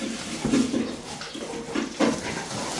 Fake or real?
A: real